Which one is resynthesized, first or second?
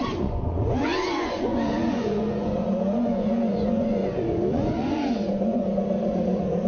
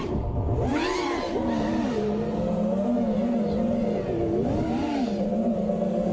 first